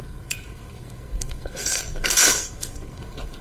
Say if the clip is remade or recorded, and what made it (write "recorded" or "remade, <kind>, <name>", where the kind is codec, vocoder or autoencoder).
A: remade, codec, SNAC